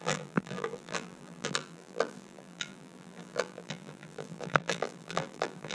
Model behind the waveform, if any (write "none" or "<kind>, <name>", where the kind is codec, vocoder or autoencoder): vocoder, BigVGAN v2